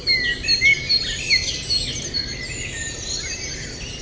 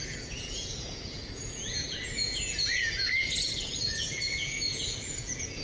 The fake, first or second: second